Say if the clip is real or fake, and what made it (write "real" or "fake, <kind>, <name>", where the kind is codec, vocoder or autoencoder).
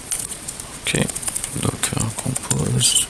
fake, vocoder, Vocos